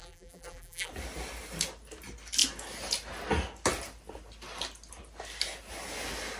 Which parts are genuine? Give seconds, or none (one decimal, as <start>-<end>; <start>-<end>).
0.9-6.4